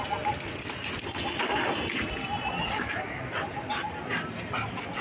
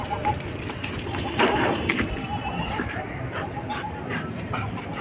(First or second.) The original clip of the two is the first